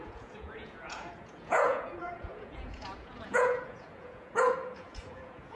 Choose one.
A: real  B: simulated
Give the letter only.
B